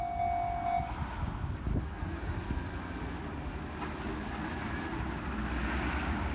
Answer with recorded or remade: recorded